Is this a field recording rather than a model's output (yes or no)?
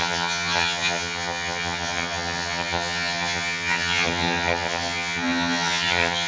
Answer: no